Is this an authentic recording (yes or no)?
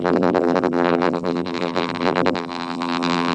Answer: no